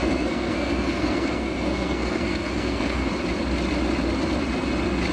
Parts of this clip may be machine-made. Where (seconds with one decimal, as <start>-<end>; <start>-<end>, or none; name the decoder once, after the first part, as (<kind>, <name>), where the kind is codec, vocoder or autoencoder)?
0.0-3.1 (codec, SNAC)